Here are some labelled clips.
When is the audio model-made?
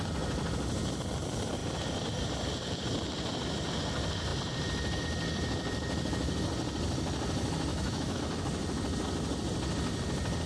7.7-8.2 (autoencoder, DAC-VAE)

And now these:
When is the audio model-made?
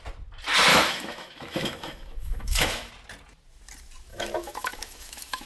0.7-2.9 (autoencoder, DAC-VAE); 4.1-5.5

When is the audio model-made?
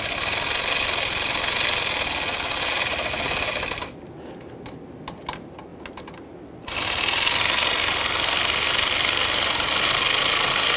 none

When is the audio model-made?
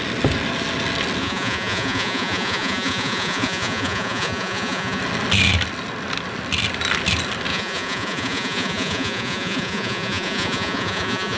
1.2-5.0 (vocoder, Vocos); 7.5-11.4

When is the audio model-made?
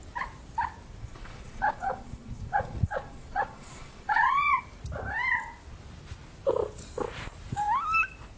1.0-4.6 (vocoder, Vocos)